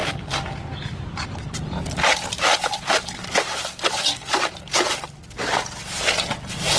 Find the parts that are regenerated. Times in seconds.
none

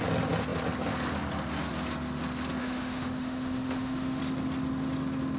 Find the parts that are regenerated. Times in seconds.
2.6-4.2 (autoencoder, DAC-VAE)

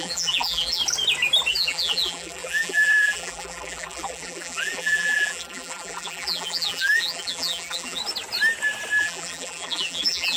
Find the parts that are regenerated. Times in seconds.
0.0-0.8 (vocoder, BigVGAN v2); 1.5-8.0; 9.0-10.4

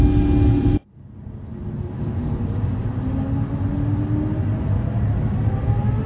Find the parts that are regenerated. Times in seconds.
0.5-3.1 (vocoder, BigVGAN v2)